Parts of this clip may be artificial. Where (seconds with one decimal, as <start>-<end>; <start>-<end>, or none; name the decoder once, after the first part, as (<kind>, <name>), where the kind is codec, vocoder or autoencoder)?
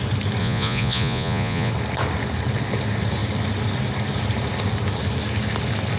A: 0.4-1.7 (vocoder, Vocos)